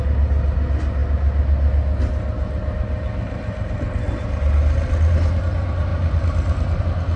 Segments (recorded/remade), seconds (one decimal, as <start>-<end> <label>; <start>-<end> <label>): 0.0-7.2 recorded